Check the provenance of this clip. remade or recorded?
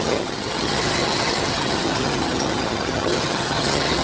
remade